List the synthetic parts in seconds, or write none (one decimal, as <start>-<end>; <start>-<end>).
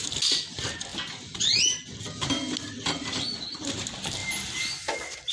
none